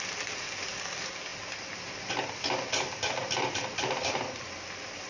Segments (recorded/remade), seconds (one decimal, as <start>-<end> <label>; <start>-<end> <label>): 0.0-5.1 recorded